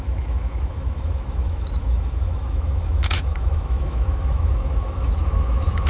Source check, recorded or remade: remade